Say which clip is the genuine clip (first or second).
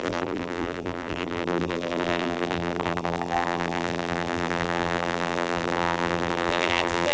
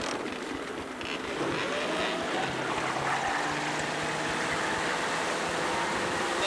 second